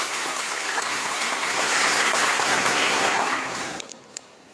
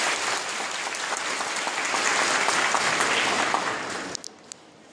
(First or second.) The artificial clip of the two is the first